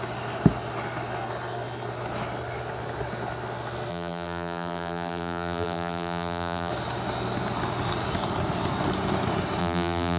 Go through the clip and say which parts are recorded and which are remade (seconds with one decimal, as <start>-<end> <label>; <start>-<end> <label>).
0.0-3.9 recorded; 3.9-6.7 remade; 6.7-9.6 recorded; 9.6-10.2 remade